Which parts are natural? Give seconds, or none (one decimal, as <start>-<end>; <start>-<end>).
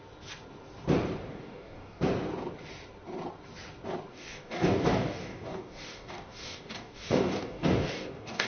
0.0-1.3; 2.0-4.1